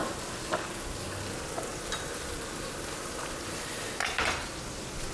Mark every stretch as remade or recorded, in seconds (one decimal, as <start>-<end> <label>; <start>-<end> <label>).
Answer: 0.0-1.7 recorded; 1.7-4.5 remade; 4.5-5.1 recorded